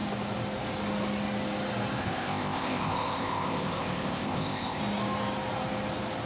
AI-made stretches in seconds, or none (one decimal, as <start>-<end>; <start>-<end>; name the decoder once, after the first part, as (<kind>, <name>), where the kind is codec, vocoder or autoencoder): 2.0-4.8 (codec, ZipCodec)